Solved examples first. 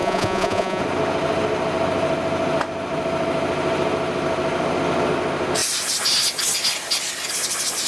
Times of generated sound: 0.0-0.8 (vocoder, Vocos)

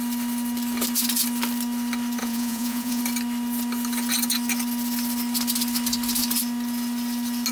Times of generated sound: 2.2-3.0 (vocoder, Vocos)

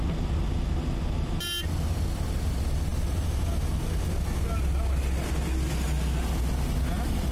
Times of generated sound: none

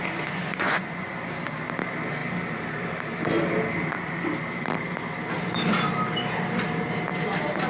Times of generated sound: 0.0-1.1 (vocoder, Vocos)